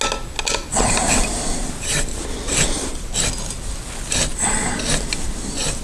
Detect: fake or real real